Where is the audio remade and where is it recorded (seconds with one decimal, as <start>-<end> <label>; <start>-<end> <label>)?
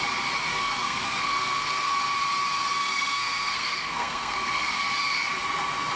0.0-0.5 recorded; 0.5-1.9 remade; 1.9-2.8 recorded; 2.8-4.8 remade; 4.8-6.0 recorded